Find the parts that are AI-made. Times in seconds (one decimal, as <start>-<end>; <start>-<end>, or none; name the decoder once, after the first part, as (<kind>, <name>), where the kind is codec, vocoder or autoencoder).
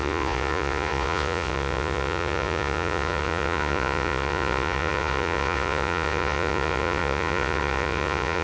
0.0-8.4 (vocoder, Vocos)